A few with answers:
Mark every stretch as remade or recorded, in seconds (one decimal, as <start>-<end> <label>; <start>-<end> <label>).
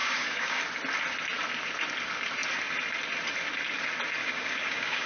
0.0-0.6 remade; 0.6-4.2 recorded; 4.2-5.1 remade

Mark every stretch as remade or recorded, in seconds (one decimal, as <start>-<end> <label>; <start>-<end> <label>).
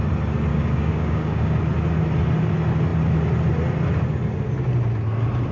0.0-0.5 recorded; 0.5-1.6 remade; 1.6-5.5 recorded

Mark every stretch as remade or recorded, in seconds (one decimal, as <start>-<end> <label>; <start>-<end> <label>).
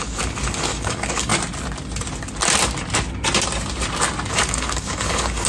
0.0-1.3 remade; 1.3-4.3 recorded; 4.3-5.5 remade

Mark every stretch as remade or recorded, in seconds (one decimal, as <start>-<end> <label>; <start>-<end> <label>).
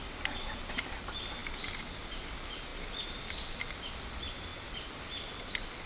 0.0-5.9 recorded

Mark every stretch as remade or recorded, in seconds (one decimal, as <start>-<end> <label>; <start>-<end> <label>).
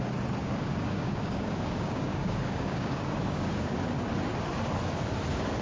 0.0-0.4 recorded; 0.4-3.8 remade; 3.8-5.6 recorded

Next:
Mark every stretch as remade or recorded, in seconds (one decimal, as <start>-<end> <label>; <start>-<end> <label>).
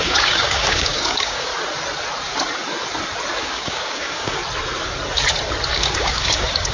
0.0-1.5 remade; 1.5-3.4 recorded; 3.4-4.4 remade; 4.4-5.7 recorded; 5.7-6.7 remade